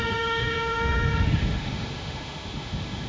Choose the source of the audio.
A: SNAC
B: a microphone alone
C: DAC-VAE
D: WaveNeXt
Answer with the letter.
C